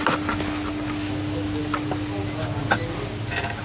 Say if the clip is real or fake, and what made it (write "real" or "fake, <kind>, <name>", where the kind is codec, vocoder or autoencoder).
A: real